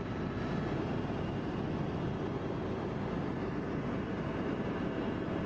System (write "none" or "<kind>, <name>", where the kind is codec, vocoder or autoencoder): none